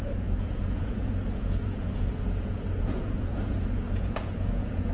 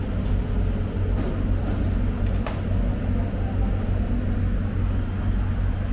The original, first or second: second